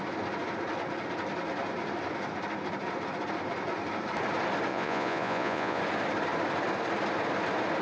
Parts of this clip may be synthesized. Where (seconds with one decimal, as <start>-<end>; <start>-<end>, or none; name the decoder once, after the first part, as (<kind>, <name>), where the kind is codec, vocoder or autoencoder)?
4.7-5.8 (vocoder, Vocos)